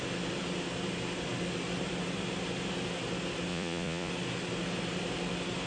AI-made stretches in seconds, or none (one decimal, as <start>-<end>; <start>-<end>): 3.5-4.1